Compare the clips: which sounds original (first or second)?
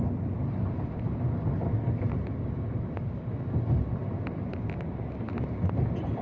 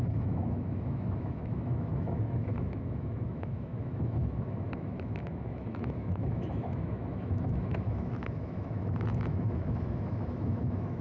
first